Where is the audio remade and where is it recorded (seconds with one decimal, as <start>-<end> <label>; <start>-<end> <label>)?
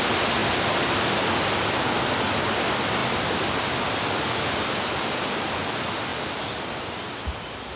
0.0-3.0 recorded; 3.0-3.9 remade; 3.9-7.8 recorded